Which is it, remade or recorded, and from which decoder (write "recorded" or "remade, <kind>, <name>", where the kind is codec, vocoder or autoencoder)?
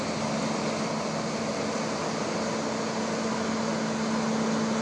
recorded